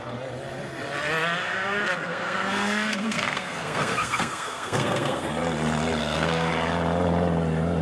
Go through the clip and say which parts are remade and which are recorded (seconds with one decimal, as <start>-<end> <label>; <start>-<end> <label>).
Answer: 0.0-1.4 recorded; 1.4-5.3 remade; 5.3-6.0 recorded; 6.0-6.5 remade; 6.5-7.8 recorded